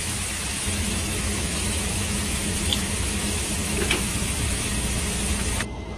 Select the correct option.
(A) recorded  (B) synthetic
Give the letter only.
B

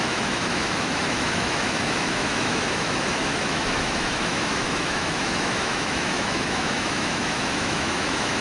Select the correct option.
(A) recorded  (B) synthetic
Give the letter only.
B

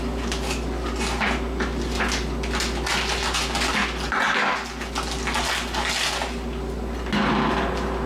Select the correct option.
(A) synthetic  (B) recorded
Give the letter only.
B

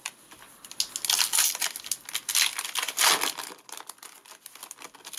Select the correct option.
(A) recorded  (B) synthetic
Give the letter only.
A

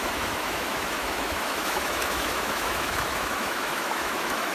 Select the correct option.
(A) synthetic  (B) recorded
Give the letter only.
A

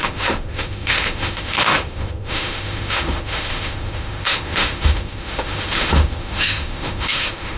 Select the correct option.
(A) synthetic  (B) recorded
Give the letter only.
A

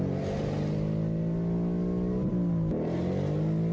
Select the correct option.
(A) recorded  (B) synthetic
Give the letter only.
A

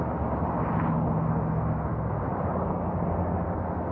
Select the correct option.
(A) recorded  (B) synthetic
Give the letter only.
A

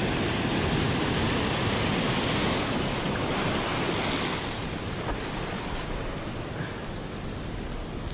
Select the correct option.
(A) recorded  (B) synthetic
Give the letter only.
A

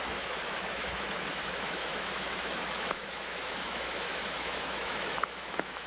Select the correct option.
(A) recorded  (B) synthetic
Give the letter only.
B